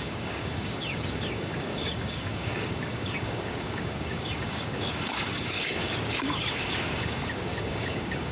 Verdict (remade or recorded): remade